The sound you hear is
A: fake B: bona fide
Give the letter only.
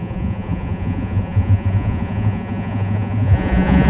A